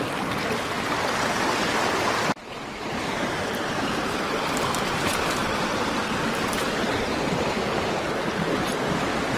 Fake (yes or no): no